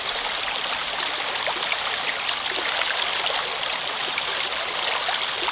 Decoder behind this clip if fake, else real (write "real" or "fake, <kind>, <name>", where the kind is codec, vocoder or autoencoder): real